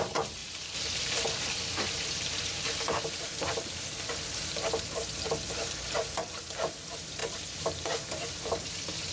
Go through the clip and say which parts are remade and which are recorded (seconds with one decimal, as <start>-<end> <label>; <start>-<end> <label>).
0.0-7.2 remade; 7.2-8.1 recorded; 8.1-9.1 remade